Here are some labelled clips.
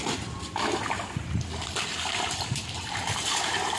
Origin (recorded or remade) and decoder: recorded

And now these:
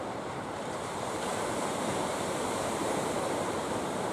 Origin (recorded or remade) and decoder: remade, vocoder, BigVGAN v2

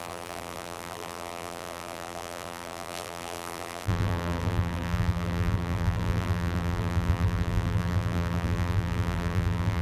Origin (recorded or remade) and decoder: remade, vocoder, BigVGAN v2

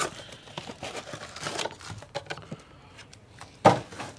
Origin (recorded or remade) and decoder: recorded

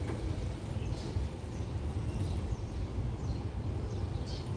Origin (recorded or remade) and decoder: remade, vocoder, BigVGAN v2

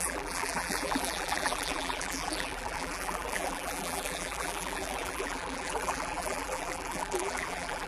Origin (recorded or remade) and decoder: remade, vocoder, BigVGAN v2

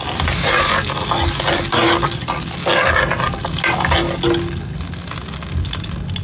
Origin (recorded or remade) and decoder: recorded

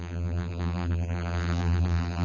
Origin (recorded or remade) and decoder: remade, vocoder, BigVGAN v2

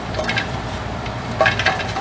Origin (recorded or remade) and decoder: remade, vocoder, BigVGAN v2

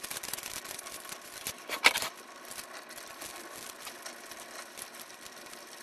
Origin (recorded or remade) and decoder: remade, vocoder, BigVGAN v2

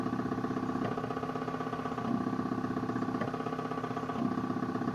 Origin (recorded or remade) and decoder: remade, vocoder, BigVGAN v2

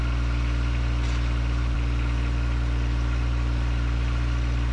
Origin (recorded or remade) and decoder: recorded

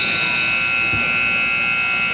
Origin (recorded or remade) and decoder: recorded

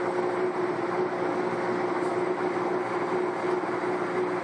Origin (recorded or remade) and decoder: recorded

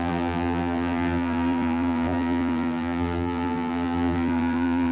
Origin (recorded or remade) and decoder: remade, vocoder, BigVGAN v2